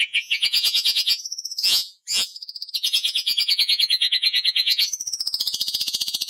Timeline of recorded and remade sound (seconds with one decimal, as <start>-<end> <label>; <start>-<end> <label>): 0.0-6.3 remade